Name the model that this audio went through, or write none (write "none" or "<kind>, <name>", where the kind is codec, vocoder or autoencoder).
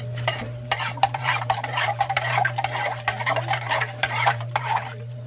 vocoder, BigVGAN v2